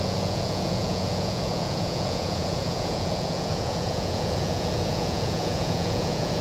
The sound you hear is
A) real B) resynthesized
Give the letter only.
B